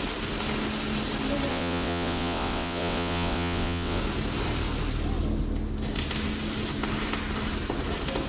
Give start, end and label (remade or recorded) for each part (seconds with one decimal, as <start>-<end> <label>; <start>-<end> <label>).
0.0-1.5 recorded; 1.5-4.0 remade; 4.0-8.3 recorded